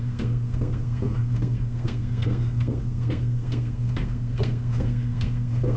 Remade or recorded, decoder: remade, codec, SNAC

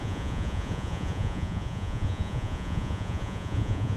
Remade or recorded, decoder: remade, vocoder, Vocos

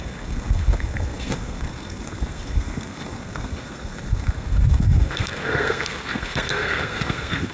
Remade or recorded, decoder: remade, codec, SNAC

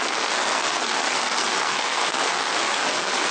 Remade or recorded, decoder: remade, codec, SNAC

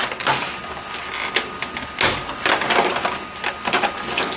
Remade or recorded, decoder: recorded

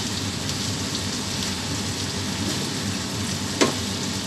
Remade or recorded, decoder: recorded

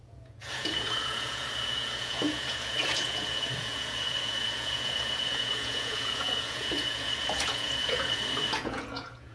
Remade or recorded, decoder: remade, vocoder, Vocos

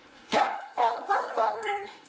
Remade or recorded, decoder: remade, codec, SNAC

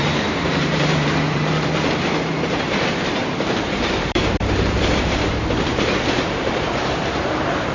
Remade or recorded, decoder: remade, vocoder, BigVGAN v2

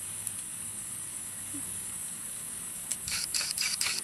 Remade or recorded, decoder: remade, codec, DAC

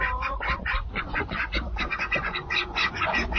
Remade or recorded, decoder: remade, vocoder, Vocos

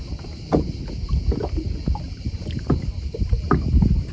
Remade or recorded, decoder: recorded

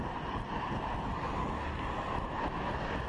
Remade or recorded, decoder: recorded